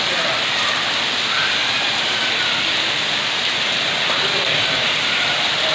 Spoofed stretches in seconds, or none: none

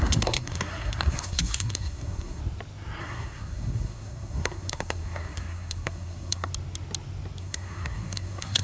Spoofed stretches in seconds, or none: 0.0-2.4 (codec, SNAC); 3.0-6.5; 7.4-8.6

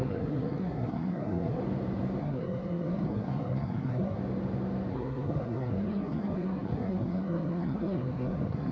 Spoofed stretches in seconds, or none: 0.0-1.6 (codec, SNAC); 2.2-4.2; 4.9-8.7

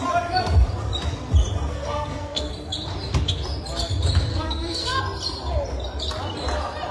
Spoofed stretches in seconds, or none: 1.7-2.5 (codec, SNAC); 4.3-5.0

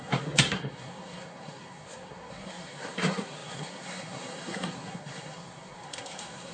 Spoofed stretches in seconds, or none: 0.0-6.5 (codec, SNAC)